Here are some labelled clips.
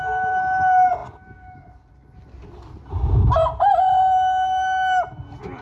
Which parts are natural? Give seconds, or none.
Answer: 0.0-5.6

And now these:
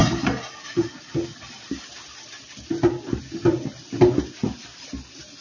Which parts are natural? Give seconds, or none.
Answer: 0.0-5.4